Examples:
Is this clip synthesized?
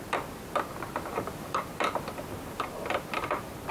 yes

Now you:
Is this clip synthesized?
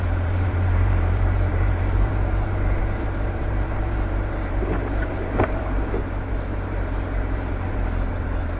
yes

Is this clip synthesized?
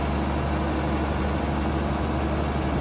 no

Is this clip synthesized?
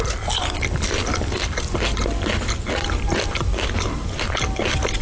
no